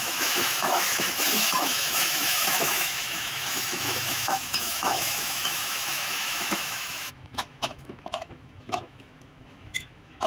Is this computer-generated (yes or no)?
yes